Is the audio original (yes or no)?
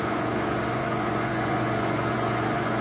no